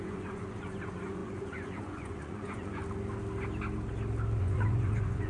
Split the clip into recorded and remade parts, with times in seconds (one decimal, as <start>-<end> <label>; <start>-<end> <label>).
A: 0.0-2.8 remade; 2.8-4.4 recorded; 4.4-5.3 remade